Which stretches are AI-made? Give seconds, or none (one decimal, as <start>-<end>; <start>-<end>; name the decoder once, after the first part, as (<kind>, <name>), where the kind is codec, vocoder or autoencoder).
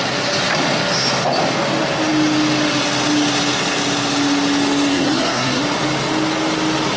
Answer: 4.9-5.6 (codec, SNAC)